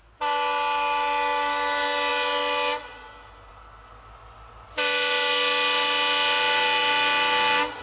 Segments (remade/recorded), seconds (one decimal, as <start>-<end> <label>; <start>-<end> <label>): 0.0-7.8 recorded